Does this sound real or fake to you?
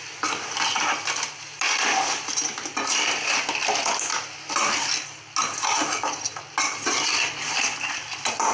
real